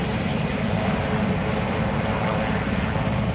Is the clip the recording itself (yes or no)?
yes